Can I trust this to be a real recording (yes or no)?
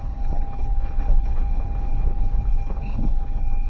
no